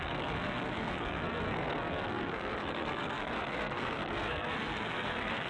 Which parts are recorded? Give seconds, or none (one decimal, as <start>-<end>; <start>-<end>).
none